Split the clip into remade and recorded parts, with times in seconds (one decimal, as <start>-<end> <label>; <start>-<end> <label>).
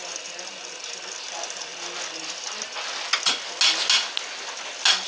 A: 0.0-5.1 recorded